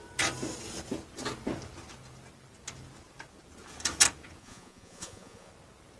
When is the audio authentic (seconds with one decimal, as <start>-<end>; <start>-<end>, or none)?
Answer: 0.0-4.4; 5.5-6.0